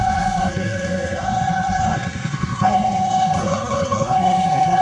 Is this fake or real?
fake